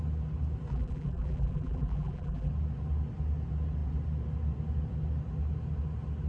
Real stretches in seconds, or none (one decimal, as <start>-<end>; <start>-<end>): 0.0-0.7; 2.5-6.3